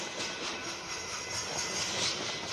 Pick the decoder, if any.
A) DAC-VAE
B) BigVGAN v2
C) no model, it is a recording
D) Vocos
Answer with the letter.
C